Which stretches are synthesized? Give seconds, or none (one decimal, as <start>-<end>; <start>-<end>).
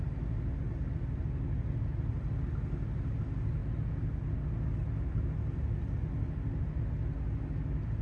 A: none